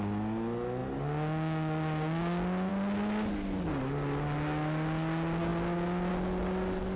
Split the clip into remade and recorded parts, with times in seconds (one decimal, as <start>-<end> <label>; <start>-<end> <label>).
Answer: 0.0-7.0 recorded